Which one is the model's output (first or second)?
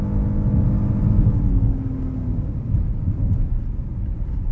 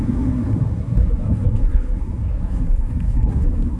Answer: second